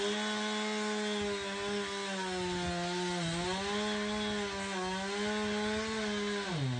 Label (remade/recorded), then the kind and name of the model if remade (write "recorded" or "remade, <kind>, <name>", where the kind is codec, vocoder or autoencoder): recorded